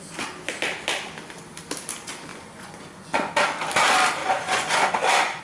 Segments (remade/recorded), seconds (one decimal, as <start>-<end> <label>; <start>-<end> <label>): 0.0-2.3 recorded; 2.3-3.3 remade; 3.3-4.2 recorded; 4.2-5.4 remade